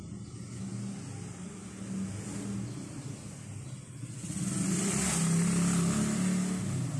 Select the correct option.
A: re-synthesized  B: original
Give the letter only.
B